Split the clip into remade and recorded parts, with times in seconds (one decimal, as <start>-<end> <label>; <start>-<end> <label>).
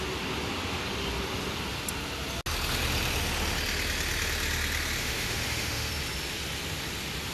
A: 0.0-5.0 recorded; 5.0-5.9 remade; 5.9-7.3 recorded